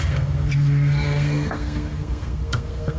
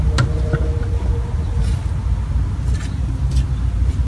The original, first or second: second